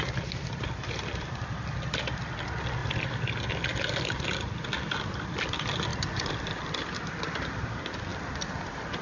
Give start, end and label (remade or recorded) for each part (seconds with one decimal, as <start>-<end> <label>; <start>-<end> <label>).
0.0-2.8 recorded; 2.8-3.3 remade; 3.3-3.7 recorded; 3.7-4.3 remade; 4.3-5.9 recorded; 5.9-6.9 remade; 6.9-8.1 recorded; 8.1-9.0 remade

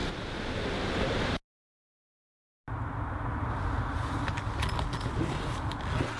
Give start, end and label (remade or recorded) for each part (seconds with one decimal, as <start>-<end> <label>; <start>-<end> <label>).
0.0-1.0 remade; 1.0-6.2 recorded

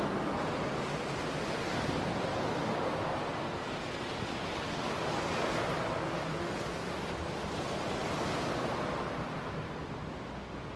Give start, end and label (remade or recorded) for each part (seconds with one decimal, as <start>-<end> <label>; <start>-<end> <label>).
0.0-10.8 recorded

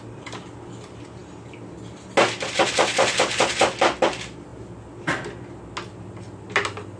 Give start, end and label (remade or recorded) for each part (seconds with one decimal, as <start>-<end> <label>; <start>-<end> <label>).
0.0-7.0 recorded

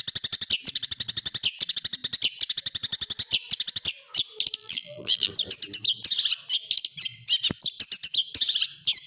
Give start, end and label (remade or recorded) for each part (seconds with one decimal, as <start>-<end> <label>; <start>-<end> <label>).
0.0-4.6 recorded; 4.6-5.3 remade; 5.3-9.1 recorded